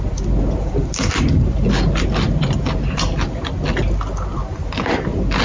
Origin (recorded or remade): recorded